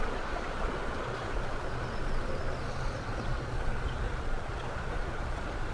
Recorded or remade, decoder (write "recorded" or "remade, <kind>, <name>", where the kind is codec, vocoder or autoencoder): remade, vocoder, Vocos